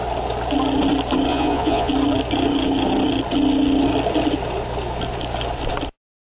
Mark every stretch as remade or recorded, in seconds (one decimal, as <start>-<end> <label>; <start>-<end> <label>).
0.0-1.3 recorded; 1.3-1.9 remade; 1.9-6.3 recorded